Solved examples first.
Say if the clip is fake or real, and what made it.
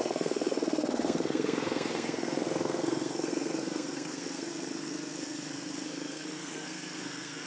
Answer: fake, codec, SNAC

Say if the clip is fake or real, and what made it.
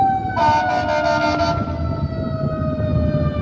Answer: real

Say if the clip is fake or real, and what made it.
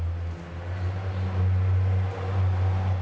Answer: real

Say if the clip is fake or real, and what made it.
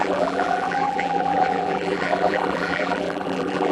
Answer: fake, vocoder, BigVGAN v2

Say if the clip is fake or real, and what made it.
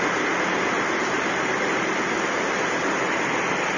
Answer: real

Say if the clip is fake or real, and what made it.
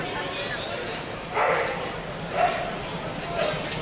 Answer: real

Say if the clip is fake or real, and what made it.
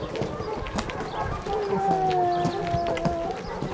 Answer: real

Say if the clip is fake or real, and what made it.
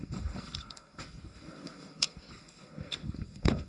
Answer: fake, codec, SNAC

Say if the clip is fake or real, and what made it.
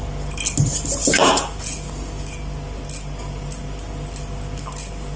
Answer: real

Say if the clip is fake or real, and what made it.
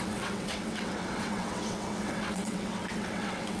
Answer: fake, vocoder, WaveNeXt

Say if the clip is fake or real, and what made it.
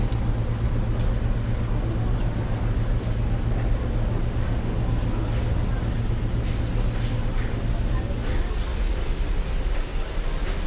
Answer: real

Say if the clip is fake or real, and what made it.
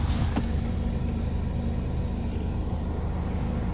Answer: real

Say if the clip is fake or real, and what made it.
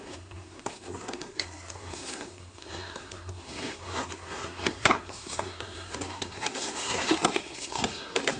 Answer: fake, codec, SNAC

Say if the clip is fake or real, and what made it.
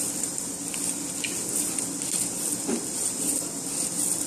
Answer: fake, vocoder, BigVGAN v2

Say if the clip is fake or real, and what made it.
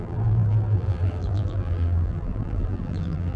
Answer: fake, vocoder, BigVGAN v2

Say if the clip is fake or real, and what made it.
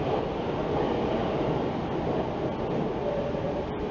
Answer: real